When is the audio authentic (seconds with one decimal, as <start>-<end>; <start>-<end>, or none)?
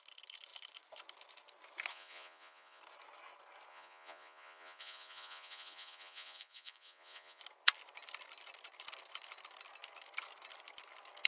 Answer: 0.0-1.9; 2.8-3.7; 7.4-11.3